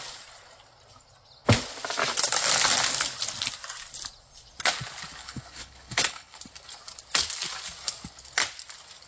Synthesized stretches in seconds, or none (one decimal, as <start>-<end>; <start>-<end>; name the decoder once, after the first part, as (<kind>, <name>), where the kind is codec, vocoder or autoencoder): 5.2-6.4 (codec, HILCodec)